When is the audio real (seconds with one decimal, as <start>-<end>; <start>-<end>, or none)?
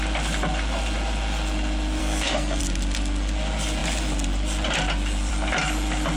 0.0-2.0; 2.6-6.2